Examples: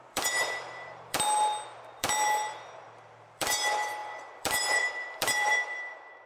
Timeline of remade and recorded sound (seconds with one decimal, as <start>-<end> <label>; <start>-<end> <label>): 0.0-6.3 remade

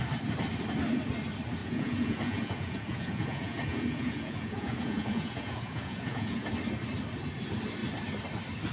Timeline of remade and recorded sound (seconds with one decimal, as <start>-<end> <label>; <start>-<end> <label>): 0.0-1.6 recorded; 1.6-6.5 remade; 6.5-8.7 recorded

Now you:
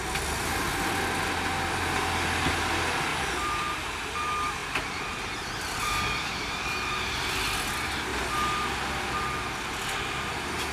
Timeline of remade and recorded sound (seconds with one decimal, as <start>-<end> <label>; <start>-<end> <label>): 0.0-3.1 recorded; 3.1-3.9 remade; 3.9-4.6 recorded; 4.6-6.9 remade; 6.9-10.7 recorded

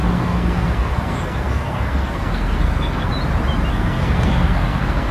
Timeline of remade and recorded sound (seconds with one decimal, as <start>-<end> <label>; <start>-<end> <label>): 0.0-3.1 remade; 3.1-3.7 recorded; 3.7-5.1 remade